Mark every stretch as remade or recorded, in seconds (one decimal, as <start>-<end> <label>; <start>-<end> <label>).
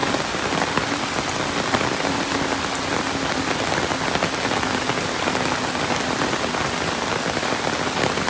0.0-8.3 recorded